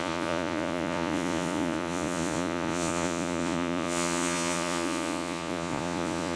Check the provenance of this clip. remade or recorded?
remade